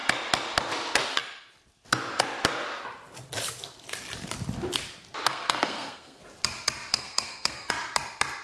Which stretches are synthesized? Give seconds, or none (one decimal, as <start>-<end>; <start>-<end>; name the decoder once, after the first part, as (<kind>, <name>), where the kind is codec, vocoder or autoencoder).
5.3-6.2 (codec, SNAC); 6.9-7.7